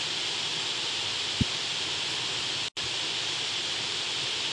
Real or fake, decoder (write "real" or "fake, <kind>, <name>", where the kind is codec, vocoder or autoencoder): real